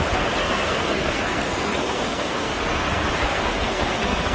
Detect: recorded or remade remade